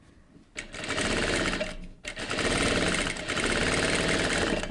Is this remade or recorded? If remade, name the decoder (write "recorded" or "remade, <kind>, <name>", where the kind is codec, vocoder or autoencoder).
recorded